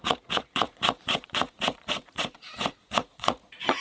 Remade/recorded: remade